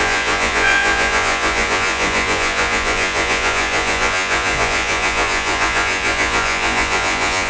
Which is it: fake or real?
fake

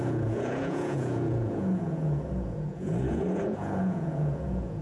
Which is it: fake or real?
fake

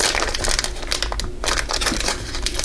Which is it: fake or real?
real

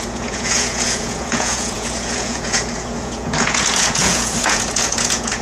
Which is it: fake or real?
fake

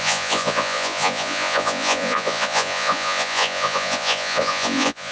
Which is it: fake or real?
fake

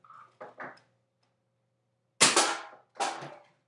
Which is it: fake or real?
real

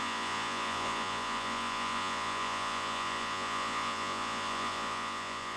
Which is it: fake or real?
fake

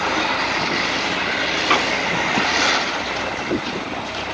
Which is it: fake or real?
real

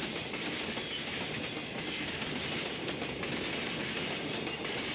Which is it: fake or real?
real